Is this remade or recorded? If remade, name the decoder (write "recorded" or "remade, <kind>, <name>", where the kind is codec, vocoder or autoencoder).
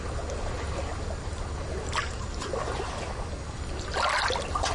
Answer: recorded